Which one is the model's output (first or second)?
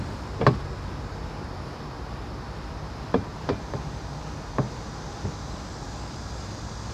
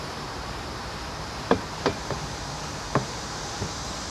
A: second